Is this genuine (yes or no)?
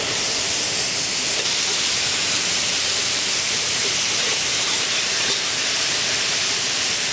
no